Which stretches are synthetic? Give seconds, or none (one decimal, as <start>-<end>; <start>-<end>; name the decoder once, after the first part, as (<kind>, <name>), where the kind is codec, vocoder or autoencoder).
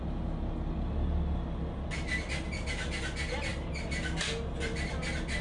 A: none